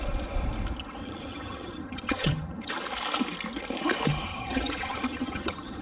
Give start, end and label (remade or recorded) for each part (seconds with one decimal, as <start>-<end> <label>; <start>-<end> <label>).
0.0-1.0 recorded; 1.0-2.7 remade; 2.7-4.3 recorded; 4.3-5.8 remade